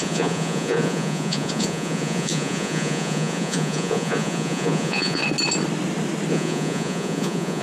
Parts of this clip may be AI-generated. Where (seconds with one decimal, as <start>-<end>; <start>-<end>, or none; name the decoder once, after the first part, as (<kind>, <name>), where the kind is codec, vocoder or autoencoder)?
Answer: 0.0-5.2 (vocoder, Vocos); 6.3-7.6